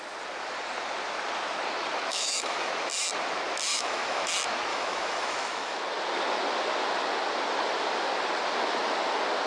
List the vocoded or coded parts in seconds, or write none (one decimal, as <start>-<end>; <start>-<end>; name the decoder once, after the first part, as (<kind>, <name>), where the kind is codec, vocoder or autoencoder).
2.1-2.7 (autoencoder, DAC-VAE); 3.7-4.3; 4.7-5.8